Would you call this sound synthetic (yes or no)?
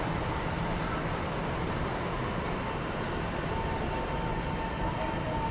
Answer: no